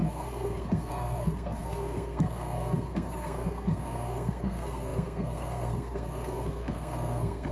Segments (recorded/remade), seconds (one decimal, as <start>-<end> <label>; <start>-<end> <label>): 0.0-7.5 remade